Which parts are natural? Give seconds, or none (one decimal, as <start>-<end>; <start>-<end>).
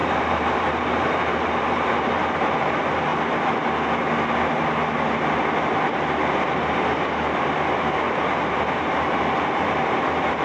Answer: 3.1-7.8